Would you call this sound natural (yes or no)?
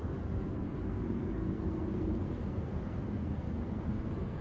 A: no